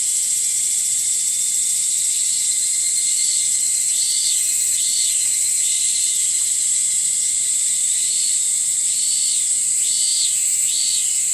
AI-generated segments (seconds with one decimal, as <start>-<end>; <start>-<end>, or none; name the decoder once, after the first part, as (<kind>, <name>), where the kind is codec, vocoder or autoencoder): 0.0-11.3 (vocoder, BigVGAN v2)